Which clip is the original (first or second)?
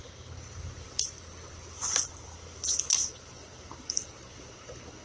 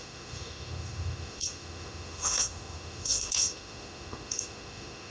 first